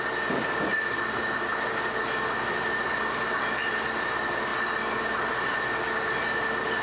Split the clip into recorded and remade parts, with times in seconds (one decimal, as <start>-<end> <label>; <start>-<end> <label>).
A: 0.0-6.8 recorded